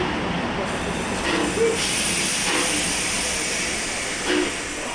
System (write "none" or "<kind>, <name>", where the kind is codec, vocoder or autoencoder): none